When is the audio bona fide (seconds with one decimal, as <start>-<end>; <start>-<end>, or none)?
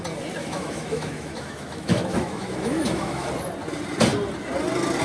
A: 0.0-0.4; 3.3-5.0